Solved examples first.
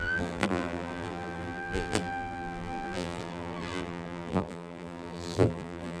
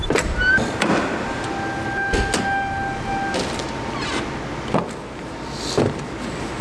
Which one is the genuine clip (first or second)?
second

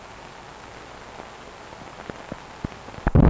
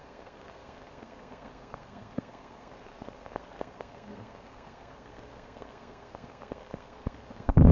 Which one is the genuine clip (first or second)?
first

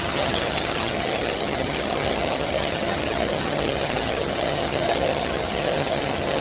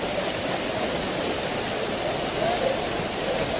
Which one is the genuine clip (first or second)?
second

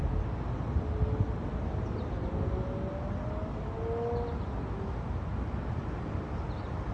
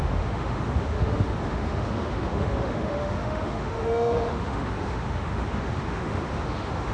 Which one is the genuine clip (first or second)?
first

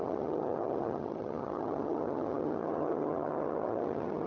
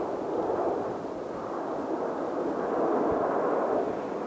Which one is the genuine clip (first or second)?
second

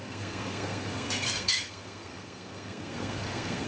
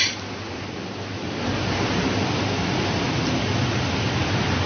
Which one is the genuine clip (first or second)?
second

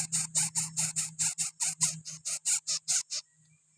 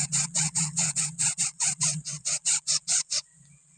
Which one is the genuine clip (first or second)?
first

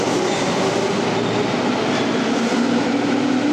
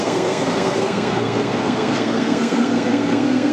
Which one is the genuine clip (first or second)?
first